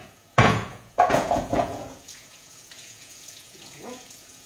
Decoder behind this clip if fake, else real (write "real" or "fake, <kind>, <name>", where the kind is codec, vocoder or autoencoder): fake, vocoder, Vocos